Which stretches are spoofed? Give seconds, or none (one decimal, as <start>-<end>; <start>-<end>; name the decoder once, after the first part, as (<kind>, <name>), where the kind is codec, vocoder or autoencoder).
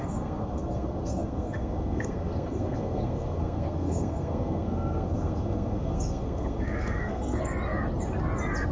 0.0-7.4 (codec, SNAC)